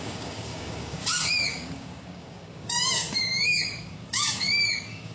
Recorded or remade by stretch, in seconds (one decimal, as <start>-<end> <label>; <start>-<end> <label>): 0.0-5.1 remade